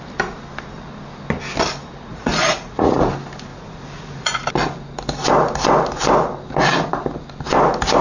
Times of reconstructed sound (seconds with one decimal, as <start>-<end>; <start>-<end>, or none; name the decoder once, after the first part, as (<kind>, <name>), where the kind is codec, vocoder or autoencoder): 2.1-3.1 (vocoder, Vocos); 3.5-4.5